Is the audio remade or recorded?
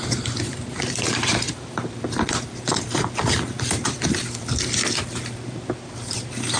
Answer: remade